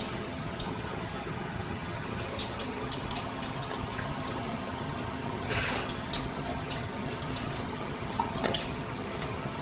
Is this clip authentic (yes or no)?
no